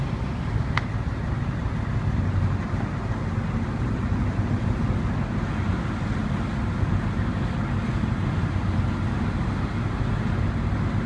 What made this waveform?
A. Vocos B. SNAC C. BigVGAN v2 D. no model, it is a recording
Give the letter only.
D